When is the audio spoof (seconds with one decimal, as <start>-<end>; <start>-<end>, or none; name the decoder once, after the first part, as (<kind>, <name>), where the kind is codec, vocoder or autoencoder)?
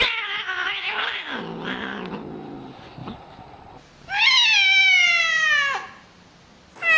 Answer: none